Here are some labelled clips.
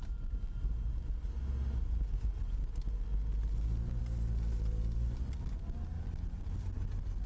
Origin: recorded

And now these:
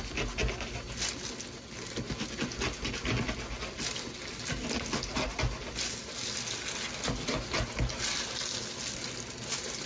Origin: recorded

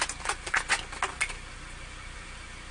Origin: recorded